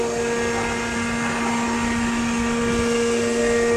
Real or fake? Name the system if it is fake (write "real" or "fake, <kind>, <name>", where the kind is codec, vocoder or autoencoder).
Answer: real